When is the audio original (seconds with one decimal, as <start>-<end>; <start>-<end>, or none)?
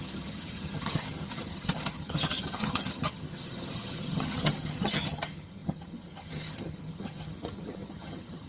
none